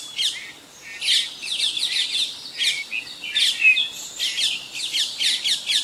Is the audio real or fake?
real